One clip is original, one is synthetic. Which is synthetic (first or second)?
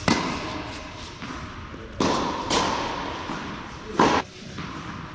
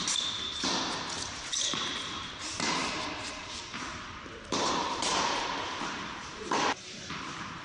second